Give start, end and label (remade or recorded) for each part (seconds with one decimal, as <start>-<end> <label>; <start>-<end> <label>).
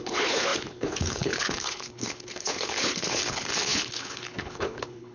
0.0-5.1 remade